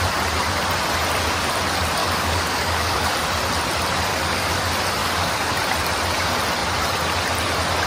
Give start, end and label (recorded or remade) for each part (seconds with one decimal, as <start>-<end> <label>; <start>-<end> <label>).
0.0-2.0 recorded; 2.0-3.1 remade; 3.1-4.1 recorded; 4.1-4.6 remade; 4.6-5.0 recorded; 5.0-5.5 remade; 5.5-7.9 recorded